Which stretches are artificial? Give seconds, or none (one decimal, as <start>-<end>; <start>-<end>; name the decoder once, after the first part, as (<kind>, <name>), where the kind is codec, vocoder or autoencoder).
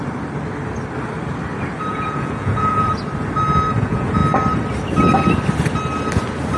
1.9-2.9 (vocoder, Vocos); 3.8-4.2